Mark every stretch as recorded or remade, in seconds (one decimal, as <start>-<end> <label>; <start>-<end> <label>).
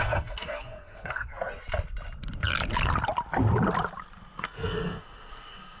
0.0-1.3 remade; 1.3-4.4 recorded; 4.4-5.8 remade